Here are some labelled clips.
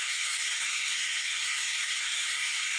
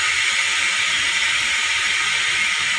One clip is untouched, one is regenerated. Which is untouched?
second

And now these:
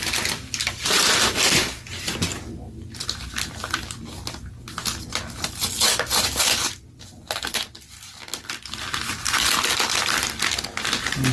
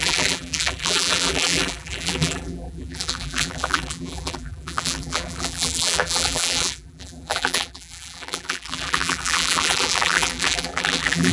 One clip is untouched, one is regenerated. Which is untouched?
first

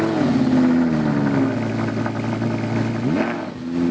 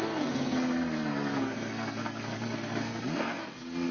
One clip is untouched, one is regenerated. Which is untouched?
first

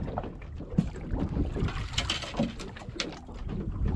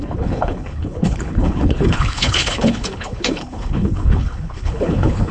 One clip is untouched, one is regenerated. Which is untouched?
first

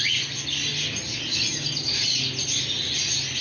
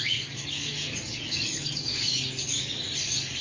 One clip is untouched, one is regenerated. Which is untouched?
first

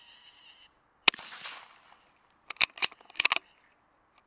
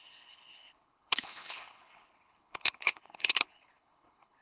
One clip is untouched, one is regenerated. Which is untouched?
first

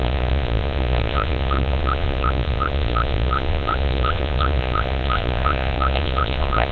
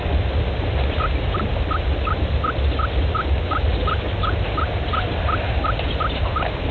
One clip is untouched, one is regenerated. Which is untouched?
second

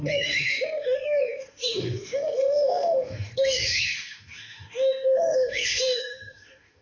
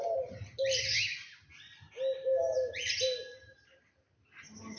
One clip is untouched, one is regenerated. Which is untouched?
second